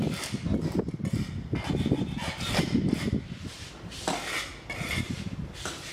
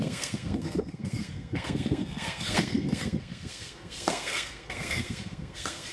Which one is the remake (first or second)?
second